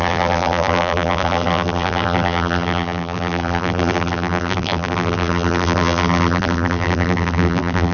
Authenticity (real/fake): fake